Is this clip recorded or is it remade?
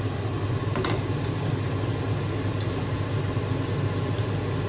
recorded